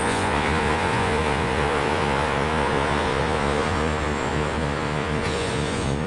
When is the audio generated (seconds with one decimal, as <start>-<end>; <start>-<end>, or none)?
0.0-6.1